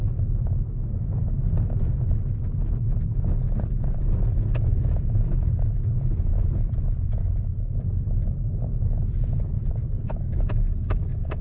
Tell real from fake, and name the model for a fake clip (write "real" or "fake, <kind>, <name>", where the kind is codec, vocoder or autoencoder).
real